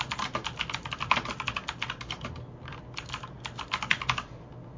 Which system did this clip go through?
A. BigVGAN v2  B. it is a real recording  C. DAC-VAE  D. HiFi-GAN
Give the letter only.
B